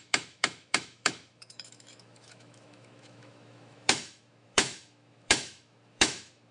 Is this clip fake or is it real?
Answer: fake